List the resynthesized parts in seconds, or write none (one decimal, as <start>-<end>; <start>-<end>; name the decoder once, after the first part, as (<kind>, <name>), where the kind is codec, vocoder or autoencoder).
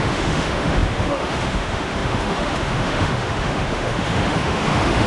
0.0-5.1 (autoencoder, DAC-VAE)